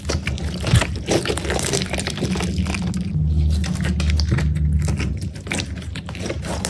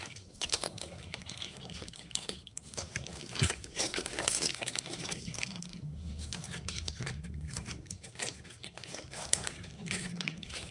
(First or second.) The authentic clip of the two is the first